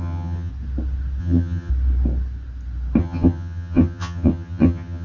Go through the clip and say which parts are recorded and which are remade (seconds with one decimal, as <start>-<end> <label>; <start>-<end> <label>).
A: 0.0-0.5 remade; 0.5-1.2 recorded; 1.2-1.7 remade; 1.7-3.0 recorded; 3.0-5.0 remade